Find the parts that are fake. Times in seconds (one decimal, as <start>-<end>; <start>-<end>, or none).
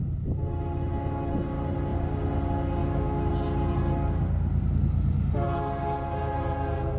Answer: 2.8-3.3